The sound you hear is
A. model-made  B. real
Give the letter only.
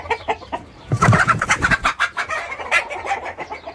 A